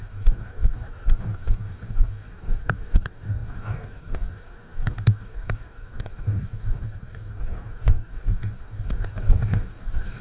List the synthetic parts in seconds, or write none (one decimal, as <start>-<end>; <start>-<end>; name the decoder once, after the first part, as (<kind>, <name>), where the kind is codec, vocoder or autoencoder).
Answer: 0.0-10.2 (codec, DAC)